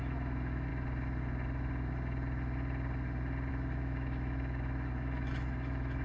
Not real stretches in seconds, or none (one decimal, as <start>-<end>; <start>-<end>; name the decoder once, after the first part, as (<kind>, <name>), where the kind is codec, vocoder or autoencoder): 0.0-0.7 (autoencoder, DAC-VAE); 3.5-6.0